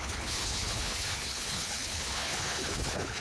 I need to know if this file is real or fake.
fake